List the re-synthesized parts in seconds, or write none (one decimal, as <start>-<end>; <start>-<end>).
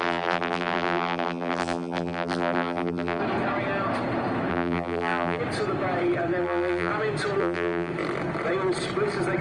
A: 0.0-3.2; 4.5-5.4; 6.4-6.9; 7.4-7.9